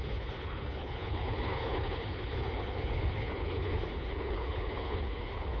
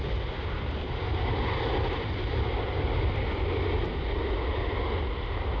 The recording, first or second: second